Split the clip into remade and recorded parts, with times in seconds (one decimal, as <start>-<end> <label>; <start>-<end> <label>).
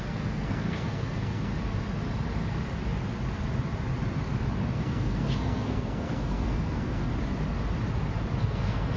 0.0-1.5 remade; 1.5-4.7 recorded; 4.7-7.1 remade; 7.1-8.4 recorded; 8.4-9.0 remade